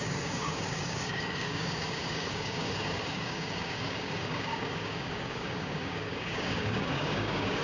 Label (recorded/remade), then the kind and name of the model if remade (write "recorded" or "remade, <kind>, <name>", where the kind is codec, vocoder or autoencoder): remade, codec, DAC